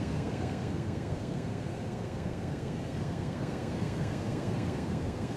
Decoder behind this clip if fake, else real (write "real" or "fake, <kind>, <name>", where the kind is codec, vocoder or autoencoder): fake, codec, SNAC